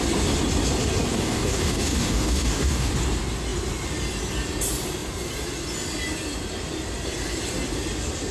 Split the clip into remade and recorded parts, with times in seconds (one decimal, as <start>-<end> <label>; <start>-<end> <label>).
0.0-1.1 recorded; 1.1-2.9 remade; 2.9-8.3 recorded